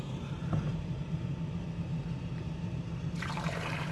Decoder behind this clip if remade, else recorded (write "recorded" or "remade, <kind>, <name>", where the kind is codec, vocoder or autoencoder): remade, vocoder, BigVGAN v2